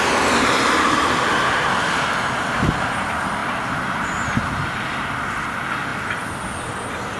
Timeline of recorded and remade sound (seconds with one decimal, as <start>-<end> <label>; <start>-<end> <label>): 0.0-7.2 recorded